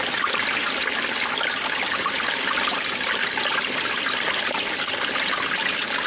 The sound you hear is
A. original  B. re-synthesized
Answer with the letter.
A